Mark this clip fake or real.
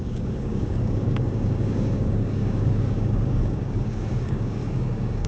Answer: fake